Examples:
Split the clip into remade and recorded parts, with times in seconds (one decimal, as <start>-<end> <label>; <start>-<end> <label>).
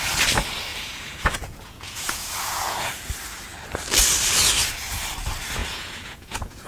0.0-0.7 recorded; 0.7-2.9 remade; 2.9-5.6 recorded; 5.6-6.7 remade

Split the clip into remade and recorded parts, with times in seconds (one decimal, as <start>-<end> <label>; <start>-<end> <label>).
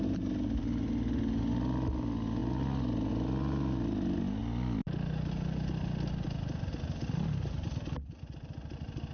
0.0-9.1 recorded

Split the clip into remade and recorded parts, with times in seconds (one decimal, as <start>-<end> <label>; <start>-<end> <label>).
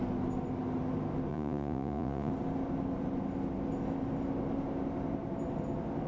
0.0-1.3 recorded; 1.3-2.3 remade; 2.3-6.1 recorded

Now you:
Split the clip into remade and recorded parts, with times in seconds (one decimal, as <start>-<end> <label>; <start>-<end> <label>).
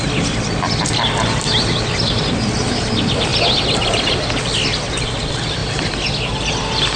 0.0-7.0 recorded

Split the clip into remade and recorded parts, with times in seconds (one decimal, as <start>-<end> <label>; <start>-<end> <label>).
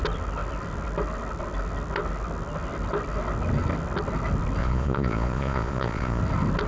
0.0-4.6 recorded; 4.6-6.2 remade; 6.2-6.7 recorded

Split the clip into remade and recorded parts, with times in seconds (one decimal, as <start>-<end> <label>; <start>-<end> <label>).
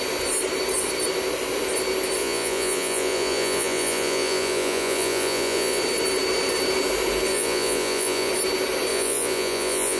0.0-2.2 recorded; 2.2-5.8 remade; 5.8-7.3 recorded; 7.3-8.3 remade; 8.3-8.9 recorded; 8.9-10.0 remade